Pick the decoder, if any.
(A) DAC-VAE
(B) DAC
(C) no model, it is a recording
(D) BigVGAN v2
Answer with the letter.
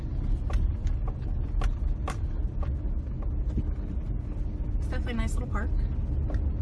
C